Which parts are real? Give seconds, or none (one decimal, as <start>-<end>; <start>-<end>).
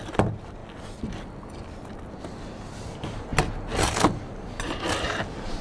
0.0-5.6